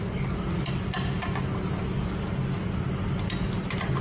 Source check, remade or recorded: recorded